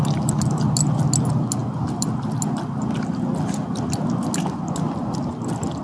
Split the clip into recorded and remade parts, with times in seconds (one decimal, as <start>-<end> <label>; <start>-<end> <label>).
0.0-5.8 recorded

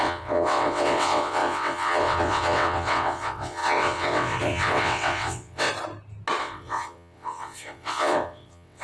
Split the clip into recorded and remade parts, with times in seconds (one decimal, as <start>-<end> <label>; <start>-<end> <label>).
0.0-5.7 remade; 5.7-6.4 recorded; 6.4-8.8 remade

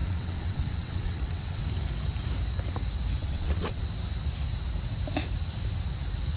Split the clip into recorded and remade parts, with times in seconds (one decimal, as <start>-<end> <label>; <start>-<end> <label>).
0.0-1.6 remade; 1.6-3.2 recorded; 3.2-3.8 remade; 3.8-6.4 recorded

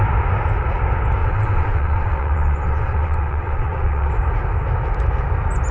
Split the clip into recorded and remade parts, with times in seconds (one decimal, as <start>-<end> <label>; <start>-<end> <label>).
0.0-1.2 recorded; 1.2-4.1 remade; 4.1-5.7 recorded

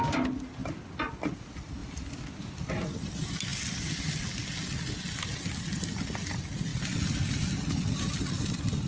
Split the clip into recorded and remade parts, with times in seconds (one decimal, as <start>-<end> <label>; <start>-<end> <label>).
0.0-8.9 recorded